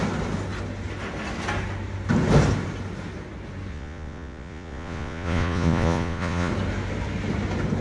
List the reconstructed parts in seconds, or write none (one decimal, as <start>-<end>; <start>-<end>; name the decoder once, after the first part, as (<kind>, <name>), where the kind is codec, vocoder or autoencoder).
3.7-6.5 (vocoder, Vocos)